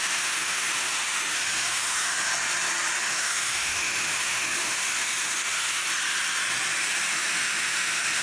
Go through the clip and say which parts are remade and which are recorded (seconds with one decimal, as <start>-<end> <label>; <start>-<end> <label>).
0.0-2.3 remade; 2.3-3.0 recorded; 3.0-5.8 remade; 5.8-7.1 recorded; 7.1-8.2 remade